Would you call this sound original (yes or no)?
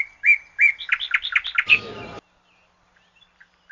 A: yes